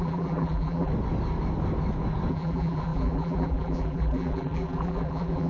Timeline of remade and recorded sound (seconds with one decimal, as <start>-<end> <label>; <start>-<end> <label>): 0.0-0.9 remade; 0.9-2.3 recorded; 2.3-5.5 remade